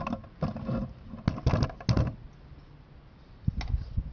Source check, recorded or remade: recorded